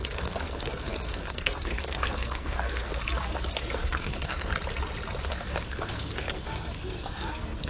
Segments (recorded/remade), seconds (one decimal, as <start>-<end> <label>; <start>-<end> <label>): 0.0-2.9 remade; 2.9-3.7 recorded; 3.7-4.5 remade; 4.5-5.3 recorded; 5.3-7.7 remade